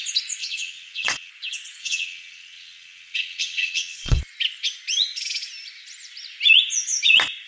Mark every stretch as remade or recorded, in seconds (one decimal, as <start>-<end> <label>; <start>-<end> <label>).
0.0-0.4 recorded; 0.4-1.3 remade; 1.3-1.8 recorded; 1.8-4.2 remade; 4.2-7.5 recorded